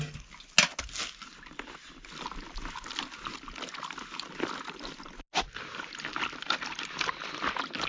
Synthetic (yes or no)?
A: no